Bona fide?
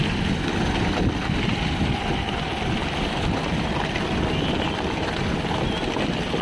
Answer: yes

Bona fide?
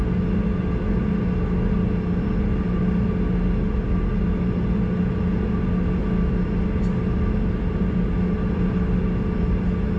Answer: yes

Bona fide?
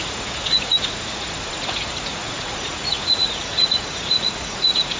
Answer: no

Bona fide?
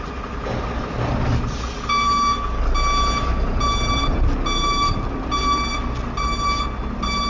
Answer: yes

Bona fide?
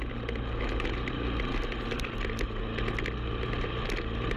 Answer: yes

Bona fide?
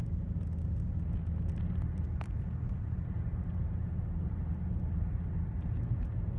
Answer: yes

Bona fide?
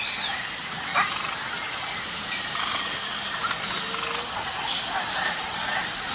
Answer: yes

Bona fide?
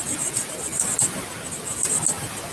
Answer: yes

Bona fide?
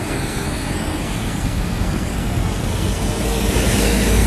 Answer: no